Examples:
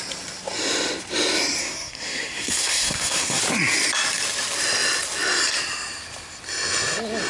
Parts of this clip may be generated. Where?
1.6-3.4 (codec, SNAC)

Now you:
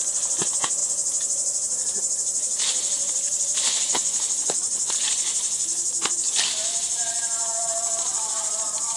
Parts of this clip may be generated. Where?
none

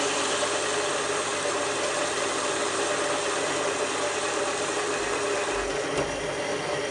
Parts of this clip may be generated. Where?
none

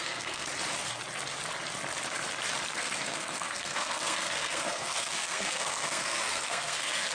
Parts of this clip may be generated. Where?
0.0-0.5 (codec, SNAC); 2.7-7.1